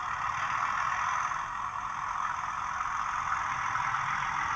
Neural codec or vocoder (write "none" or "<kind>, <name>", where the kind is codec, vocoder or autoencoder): none